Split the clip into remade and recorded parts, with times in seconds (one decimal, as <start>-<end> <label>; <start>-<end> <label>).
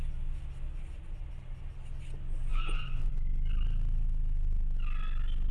0.0-2.5 recorded; 2.5-3.1 remade; 3.1-5.5 recorded